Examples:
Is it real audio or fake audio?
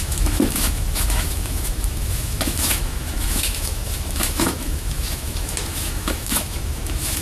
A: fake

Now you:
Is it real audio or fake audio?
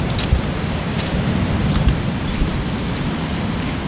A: real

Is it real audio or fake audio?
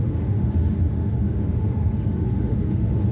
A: fake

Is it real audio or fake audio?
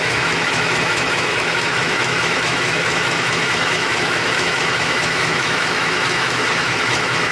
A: fake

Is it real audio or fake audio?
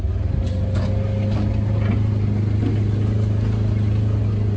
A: real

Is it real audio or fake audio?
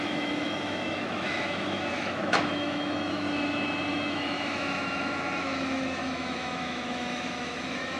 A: fake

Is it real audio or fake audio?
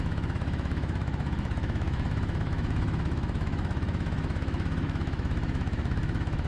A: fake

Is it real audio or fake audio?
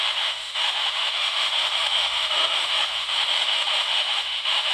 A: fake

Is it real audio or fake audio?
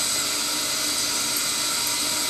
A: real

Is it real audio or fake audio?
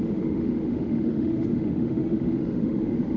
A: fake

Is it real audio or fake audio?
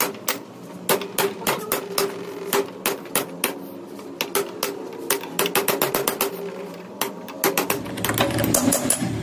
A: real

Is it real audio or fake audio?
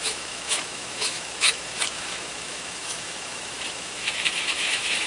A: fake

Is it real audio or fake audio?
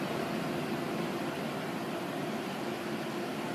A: real